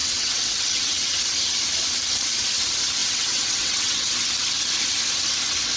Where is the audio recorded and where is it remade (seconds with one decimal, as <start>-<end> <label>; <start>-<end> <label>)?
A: 0.0-1.2 remade; 1.2-3.0 recorded; 3.0-4.1 remade; 4.1-5.8 recorded